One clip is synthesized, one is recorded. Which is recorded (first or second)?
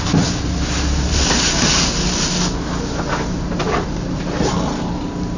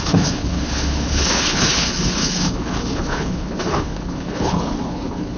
first